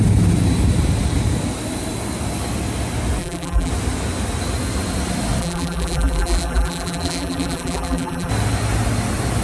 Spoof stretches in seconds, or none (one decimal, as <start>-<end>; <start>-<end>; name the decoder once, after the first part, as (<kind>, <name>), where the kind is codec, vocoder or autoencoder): 3.2-3.7 (vocoder, BigVGAN v2); 5.4-8.3